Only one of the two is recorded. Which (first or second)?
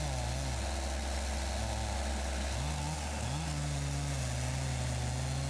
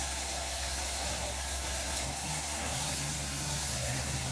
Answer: first